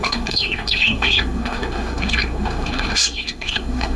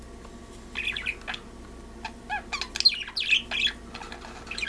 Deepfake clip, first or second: first